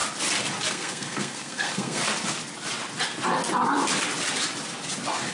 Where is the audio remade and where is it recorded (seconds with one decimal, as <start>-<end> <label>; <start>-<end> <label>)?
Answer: 0.0-0.7 recorded; 0.7-2.0 remade; 2.0-5.3 recorded